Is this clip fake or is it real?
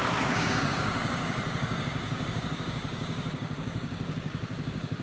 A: fake